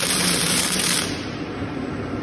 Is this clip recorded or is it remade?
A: remade